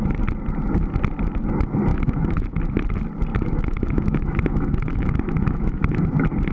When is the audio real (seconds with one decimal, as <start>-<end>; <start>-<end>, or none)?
0.0-1.9; 2.6-3.3; 6.0-6.5